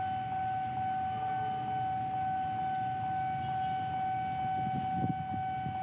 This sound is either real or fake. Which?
real